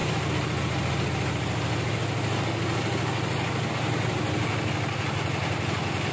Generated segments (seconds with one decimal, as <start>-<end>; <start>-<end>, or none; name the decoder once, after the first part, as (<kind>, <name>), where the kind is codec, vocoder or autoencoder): none